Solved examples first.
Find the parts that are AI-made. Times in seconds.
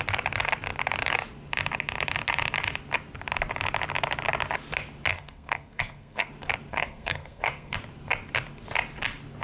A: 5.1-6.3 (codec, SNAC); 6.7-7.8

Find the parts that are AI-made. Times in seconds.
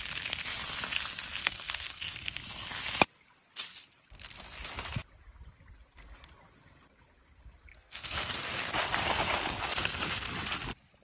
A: 1.4-2.4 (codec, SNAC); 7.7-8.3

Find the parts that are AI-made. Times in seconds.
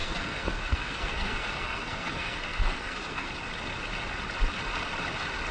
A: 0.0-3.3 (codec, SNAC)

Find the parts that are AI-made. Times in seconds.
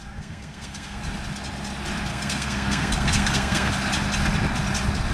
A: 0.0-1.0 (codec, SNAC); 2.1-3.7